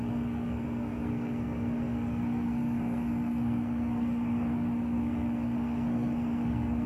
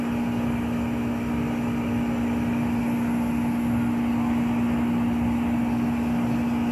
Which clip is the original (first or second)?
second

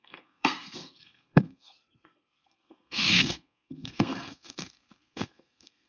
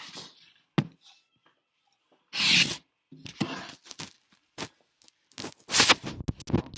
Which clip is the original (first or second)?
second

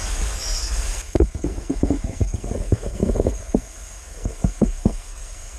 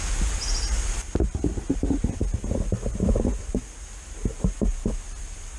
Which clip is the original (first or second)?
second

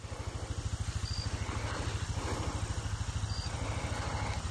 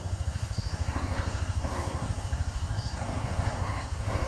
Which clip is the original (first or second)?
first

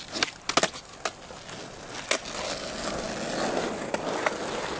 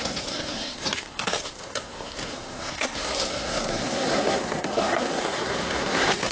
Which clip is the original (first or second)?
first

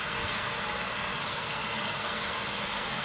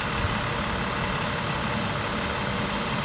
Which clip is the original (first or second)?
second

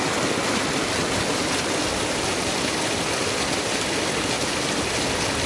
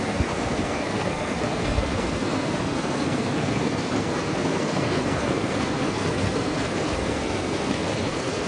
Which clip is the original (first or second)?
first